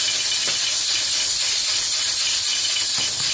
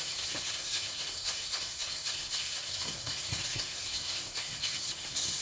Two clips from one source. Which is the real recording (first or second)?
first